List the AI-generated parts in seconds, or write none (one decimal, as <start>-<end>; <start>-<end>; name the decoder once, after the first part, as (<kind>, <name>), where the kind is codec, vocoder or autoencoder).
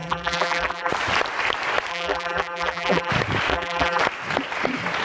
0.0-0.9 (vocoder, BigVGAN v2); 1.9-3.1; 3.5-4.0